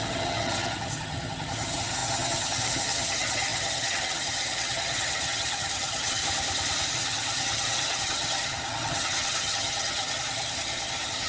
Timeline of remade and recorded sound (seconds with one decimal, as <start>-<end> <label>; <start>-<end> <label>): 0.0-6.2 remade; 6.2-6.9 recorded; 6.9-11.3 remade